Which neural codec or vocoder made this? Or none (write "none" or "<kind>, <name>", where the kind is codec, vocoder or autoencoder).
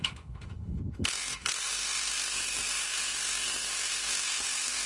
autoencoder, DAC-VAE